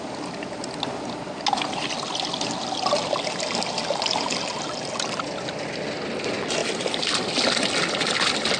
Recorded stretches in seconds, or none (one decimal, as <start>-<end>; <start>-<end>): 0.0-8.6

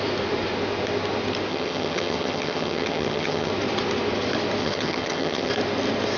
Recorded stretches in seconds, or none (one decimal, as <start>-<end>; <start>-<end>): 0.0-1.5; 3.5-4.6; 5.5-6.2

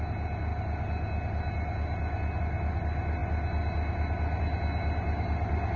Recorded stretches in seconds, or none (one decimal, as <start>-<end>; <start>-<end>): 0.0-5.8